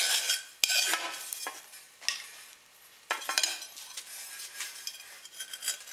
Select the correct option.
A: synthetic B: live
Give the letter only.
B